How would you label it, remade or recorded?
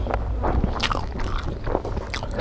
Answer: remade